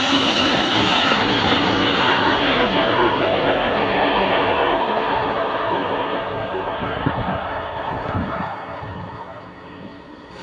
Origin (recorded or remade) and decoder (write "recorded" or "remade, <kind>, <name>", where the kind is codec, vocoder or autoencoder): remade, codec, SNAC